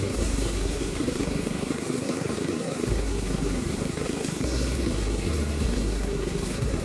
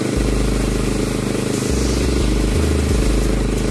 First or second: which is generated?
first